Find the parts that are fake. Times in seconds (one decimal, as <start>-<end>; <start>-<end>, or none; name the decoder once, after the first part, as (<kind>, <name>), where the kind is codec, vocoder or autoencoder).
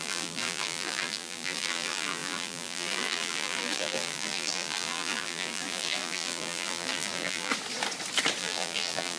0.0-7.5 (vocoder, BigVGAN v2); 8.4-9.2